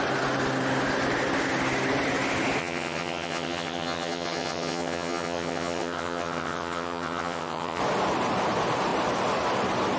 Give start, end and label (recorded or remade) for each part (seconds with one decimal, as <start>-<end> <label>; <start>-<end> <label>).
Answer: 0.0-2.6 recorded; 2.6-7.8 remade; 7.8-10.0 recorded

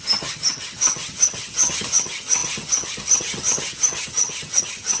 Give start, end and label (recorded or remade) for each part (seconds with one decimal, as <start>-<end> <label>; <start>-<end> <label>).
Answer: 0.0-5.0 remade